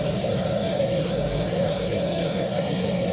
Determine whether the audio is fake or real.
fake